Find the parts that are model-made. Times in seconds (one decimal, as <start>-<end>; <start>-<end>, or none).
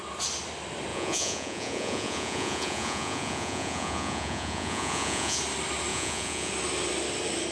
0.9-5.4; 5.9-6.5